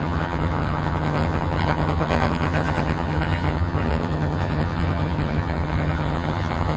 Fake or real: fake